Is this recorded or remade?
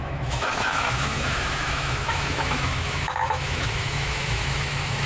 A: remade